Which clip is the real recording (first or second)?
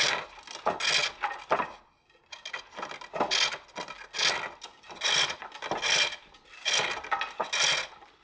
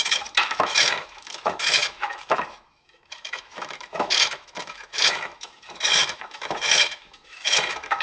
first